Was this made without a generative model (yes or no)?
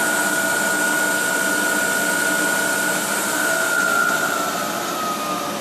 yes